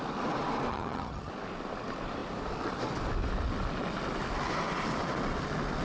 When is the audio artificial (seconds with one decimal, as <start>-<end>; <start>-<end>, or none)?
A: 0.7-1.3